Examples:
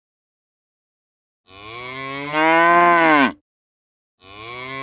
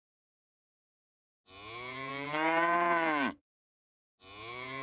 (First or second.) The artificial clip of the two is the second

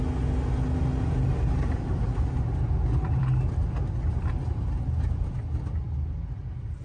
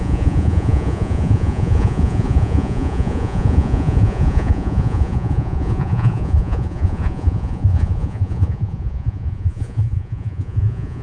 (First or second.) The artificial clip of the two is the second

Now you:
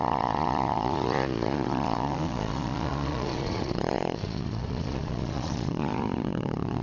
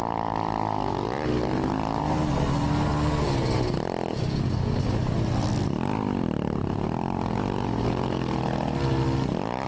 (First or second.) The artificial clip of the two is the first